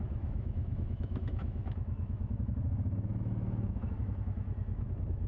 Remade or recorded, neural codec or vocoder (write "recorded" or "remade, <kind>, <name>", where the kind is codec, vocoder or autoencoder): remade, autoencoder, DAC-VAE